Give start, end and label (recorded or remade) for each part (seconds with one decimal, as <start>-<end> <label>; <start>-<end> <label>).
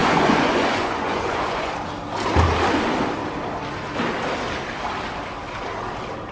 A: 0.0-1.7 remade; 1.7-6.3 recorded